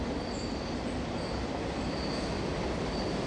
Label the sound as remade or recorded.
recorded